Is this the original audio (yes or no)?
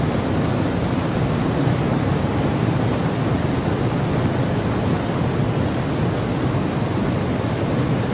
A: yes